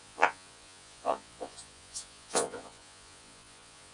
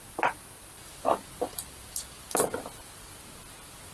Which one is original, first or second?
second